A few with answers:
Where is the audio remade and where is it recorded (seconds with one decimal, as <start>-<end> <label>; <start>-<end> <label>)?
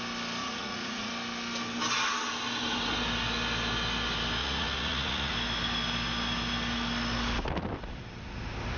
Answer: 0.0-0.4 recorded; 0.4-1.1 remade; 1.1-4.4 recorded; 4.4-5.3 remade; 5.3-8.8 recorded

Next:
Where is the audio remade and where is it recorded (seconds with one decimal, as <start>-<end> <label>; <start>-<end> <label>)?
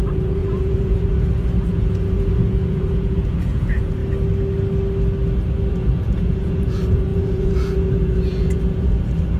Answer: 0.0-4.0 remade; 4.0-5.7 recorded; 5.7-9.4 remade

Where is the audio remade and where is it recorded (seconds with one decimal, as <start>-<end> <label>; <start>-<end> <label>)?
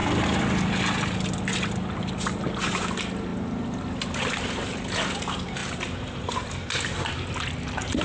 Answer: 0.0-8.0 recorded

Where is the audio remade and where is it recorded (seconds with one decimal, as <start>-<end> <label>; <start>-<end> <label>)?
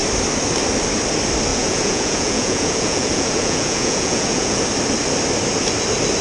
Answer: 0.0-1.5 recorded; 1.5-4.6 remade; 4.6-6.2 recorded